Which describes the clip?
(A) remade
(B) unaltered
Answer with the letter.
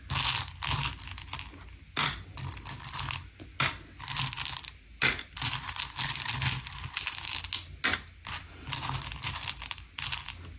B